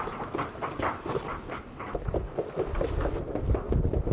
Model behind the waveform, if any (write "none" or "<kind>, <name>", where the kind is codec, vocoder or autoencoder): vocoder, BigVGAN v2